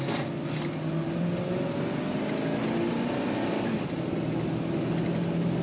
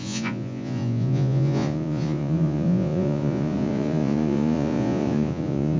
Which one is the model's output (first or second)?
second